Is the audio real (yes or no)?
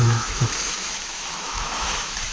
no